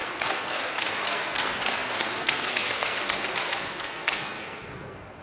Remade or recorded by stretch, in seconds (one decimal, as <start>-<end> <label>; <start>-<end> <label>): 0.0-5.2 remade